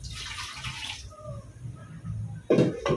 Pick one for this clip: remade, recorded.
recorded